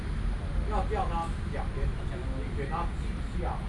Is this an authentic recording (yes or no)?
yes